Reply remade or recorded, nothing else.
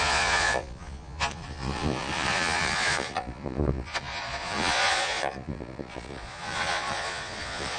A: remade